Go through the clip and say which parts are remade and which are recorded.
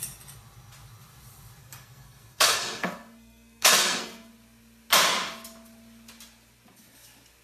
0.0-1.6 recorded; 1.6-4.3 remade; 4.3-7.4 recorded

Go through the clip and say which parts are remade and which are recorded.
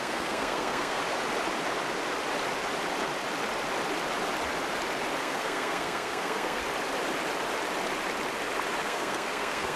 0.0-1.0 remade; 1.0-5.2 recorded; 5.2-6.6 remade; 6.6-8.8 recorded; 8.8-9.8 remade